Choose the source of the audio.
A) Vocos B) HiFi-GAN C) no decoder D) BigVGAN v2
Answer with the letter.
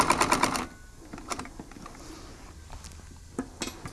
C